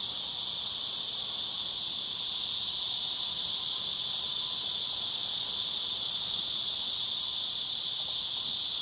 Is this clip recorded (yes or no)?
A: yes